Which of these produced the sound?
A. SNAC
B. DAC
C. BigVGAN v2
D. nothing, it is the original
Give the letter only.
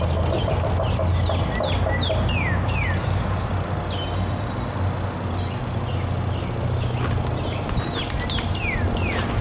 D